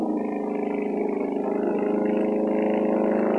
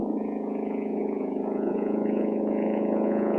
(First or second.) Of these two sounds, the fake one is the second